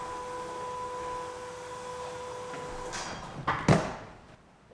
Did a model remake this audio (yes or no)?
no